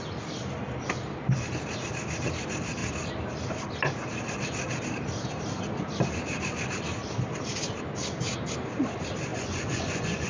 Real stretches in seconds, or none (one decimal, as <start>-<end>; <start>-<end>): 0.0-9.3

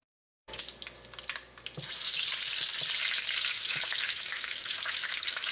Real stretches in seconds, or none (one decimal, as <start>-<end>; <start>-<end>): 0.6-3.5

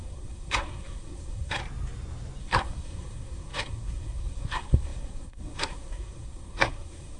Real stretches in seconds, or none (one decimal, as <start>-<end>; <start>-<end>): 1.6-2.4